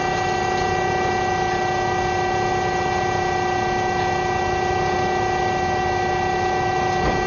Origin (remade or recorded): recorded